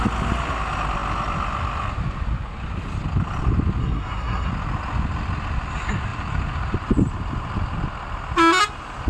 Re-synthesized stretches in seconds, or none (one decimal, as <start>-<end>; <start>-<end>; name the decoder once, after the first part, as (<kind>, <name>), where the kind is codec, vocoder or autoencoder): 3.8-4.5 (codec, SNAC)